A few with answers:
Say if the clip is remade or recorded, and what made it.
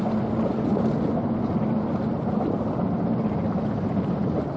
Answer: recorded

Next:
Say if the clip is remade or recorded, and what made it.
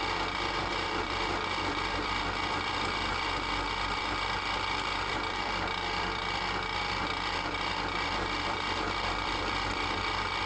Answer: remade, vocoder, BigVGAN v2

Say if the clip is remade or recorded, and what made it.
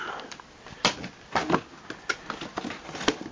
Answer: recorded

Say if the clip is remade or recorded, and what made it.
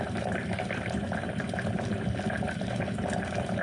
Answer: remade, vocoder, BigVGAN v2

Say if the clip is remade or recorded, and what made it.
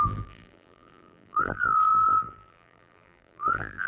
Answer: remade, vocoder, BigVGAN v2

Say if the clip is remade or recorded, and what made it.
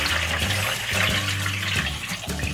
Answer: recorded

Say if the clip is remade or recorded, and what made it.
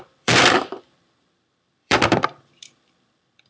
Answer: remade, vocoder, BigVGAN v2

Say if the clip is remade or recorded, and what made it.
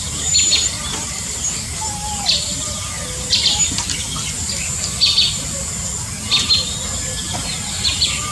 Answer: recorded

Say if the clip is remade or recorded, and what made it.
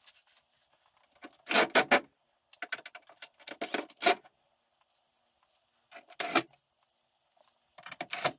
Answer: recorded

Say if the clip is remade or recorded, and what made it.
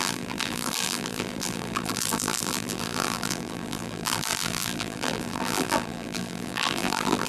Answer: remade, vocoder, BigVGAN v2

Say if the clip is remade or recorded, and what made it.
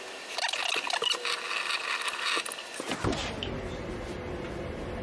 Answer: recorded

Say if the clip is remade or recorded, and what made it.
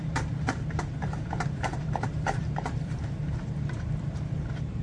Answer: remade, vocoder, BigVGAN v2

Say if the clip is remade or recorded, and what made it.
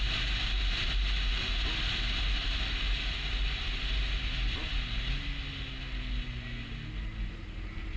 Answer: recorded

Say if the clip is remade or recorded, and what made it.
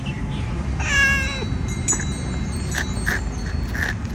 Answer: recorded